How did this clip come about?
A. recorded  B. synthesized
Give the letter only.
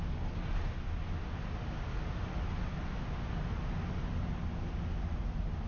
A